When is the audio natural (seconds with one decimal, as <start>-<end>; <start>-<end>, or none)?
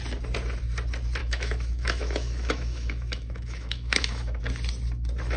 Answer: 0.0-1.2; 4.4-5.4